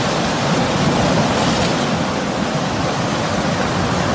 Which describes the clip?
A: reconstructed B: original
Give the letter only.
B